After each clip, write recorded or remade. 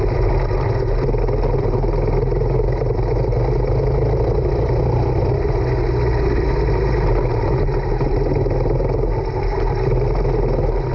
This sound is recorded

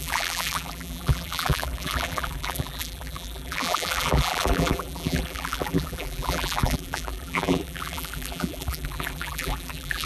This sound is remade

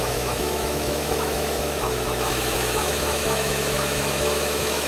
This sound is remade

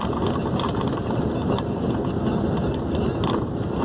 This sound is recorded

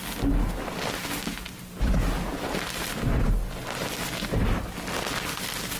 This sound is recorded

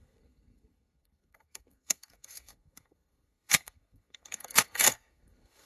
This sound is remade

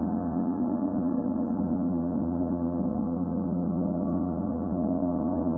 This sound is remade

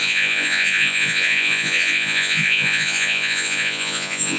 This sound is remade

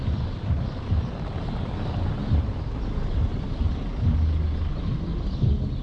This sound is recorded